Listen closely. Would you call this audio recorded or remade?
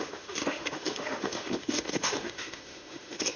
remade